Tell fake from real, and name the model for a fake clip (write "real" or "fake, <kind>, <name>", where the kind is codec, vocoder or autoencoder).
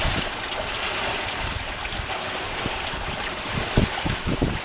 real